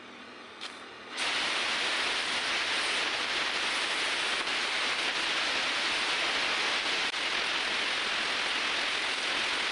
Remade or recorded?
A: recorded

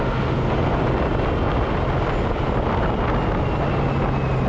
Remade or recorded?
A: recorded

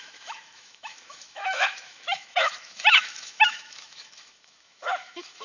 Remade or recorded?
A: remade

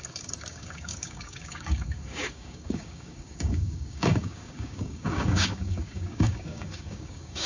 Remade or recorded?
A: remade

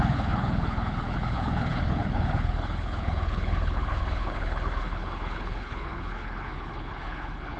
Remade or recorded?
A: remade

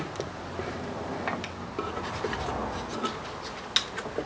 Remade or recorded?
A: recorded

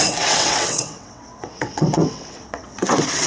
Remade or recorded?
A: remade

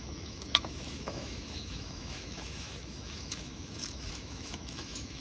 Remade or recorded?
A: remade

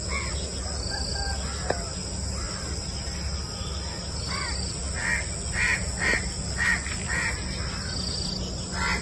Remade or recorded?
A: recorded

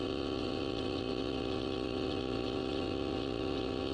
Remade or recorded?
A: remade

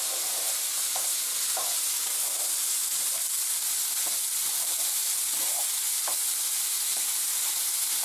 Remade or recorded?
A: recorded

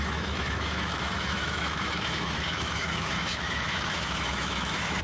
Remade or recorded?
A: remade